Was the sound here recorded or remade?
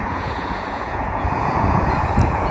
remade